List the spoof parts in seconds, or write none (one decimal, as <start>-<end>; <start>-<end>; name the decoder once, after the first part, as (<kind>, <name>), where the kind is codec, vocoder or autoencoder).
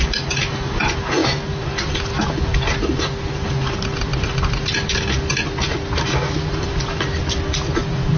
none